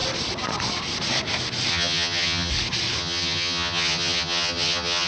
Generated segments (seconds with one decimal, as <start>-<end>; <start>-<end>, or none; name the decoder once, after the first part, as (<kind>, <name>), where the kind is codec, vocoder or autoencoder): 1.7-2.5 (vocoder, HiFi-GAN); 3.0-5.1